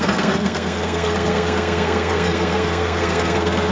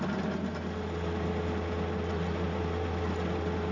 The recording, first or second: second